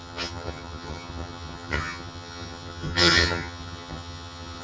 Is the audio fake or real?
fake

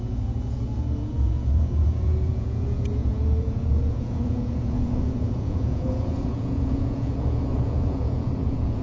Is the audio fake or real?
fake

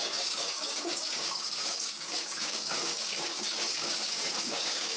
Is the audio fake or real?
fake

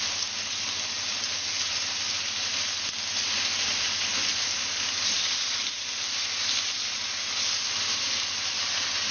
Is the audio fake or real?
real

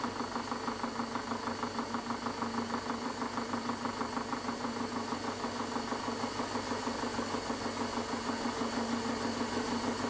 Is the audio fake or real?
real